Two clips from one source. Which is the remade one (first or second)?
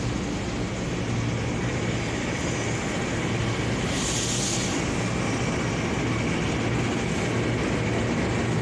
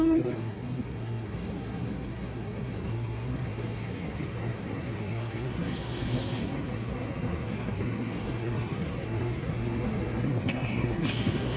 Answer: second